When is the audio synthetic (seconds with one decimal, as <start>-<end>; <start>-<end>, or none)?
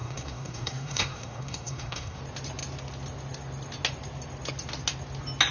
0.0-2.2